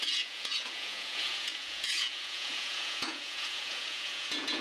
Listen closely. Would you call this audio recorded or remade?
remade